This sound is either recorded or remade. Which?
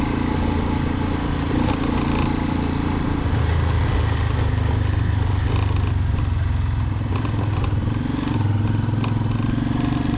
recorded